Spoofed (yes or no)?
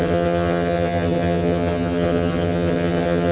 yes